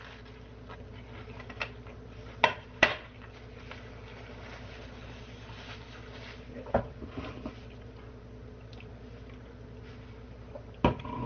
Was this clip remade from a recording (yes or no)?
no